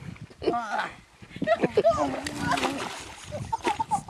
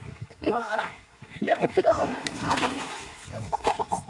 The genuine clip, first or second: first